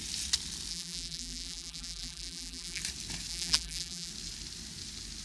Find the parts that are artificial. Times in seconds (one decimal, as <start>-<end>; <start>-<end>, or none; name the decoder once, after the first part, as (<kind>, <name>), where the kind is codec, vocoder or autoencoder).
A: 0.7-2.8 (vocoder, BigVGAN v2); 3.3-4.1